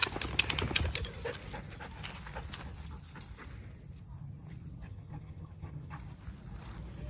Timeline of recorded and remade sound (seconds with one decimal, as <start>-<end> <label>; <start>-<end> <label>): 0.0-4.9 recorded; 4.9-5.9 remade; 5.9-7.1 recorded